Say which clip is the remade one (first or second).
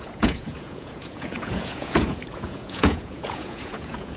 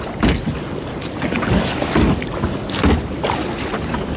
first